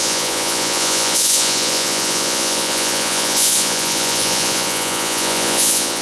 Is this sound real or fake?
fake